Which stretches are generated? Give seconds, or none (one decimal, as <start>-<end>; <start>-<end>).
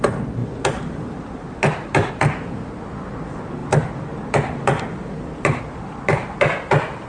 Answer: 0.4-2.1; 3.6-5.6